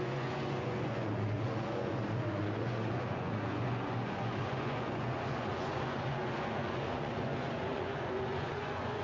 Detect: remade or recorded remade